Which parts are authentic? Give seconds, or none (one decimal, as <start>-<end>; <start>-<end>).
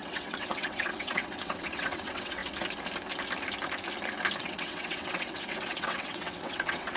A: 2.4-4.4